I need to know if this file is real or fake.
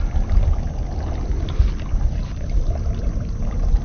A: real